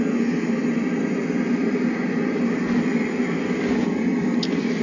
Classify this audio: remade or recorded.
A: recorded